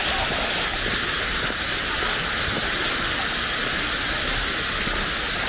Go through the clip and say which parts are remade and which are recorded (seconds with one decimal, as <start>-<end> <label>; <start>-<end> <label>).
0.0-5.5 recorded